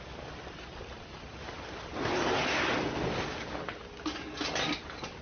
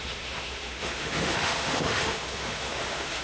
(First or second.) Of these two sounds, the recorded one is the first